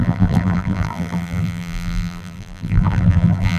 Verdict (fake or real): fake